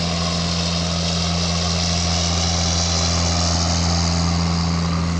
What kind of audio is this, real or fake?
real